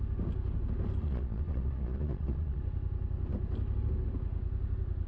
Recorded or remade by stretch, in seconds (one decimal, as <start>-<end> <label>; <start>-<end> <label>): 0.0-1.0 recorded; 1.0-2.6 remade; 2.6-5.1 recorded